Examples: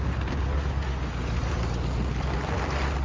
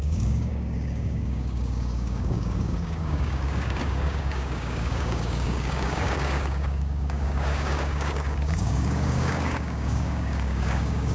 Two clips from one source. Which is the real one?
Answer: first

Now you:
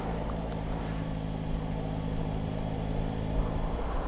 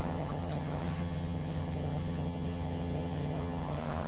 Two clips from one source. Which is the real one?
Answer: first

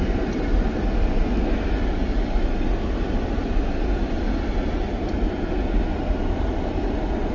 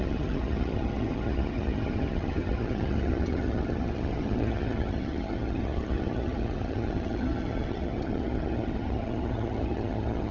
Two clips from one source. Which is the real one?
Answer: first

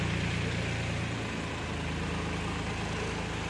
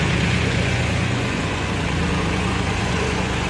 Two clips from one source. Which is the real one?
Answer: first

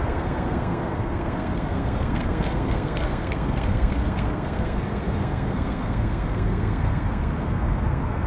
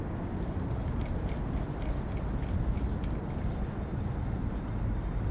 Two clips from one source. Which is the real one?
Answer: second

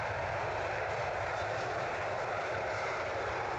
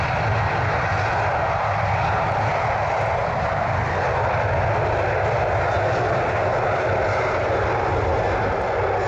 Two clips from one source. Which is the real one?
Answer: second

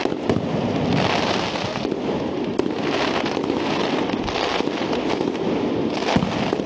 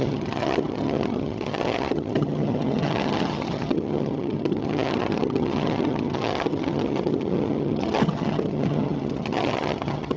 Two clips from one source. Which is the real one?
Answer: first